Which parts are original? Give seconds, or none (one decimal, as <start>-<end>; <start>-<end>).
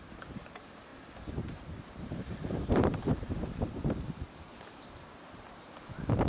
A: none